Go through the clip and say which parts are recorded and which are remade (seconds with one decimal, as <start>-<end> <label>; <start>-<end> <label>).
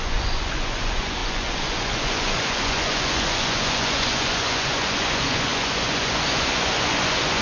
0.0-7.4 remade